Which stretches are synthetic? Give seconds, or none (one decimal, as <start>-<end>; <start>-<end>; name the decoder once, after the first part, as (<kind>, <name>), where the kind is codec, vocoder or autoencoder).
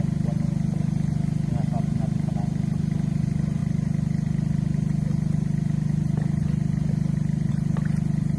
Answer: none